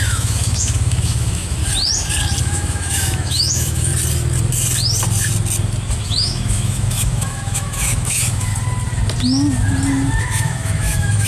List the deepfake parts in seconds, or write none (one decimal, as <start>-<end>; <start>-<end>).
0.0-1.6; 2.4-3.9; 6.0-8.5; 10.2-11.3

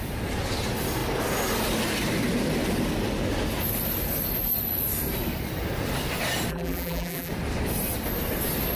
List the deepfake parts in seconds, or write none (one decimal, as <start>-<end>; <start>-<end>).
6.5-7.3

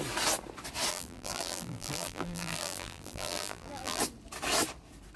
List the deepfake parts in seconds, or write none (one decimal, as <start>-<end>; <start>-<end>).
0.9-4.0

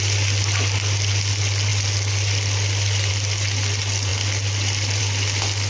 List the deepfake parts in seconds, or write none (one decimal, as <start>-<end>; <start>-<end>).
none

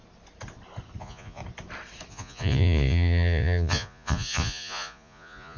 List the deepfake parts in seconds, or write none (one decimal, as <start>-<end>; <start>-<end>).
1.0-1.4; 2.1-5.6

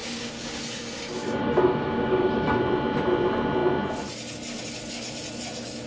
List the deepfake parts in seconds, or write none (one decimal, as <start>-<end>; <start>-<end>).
0.0-0.6; 1.2-2.6

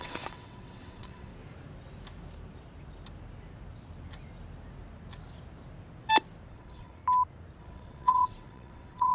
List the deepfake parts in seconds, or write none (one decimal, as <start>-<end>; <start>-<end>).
0.0-1.3; 6.5-7.0; 7.6-9.1

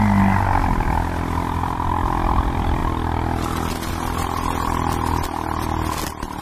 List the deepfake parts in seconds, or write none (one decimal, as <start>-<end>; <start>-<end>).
none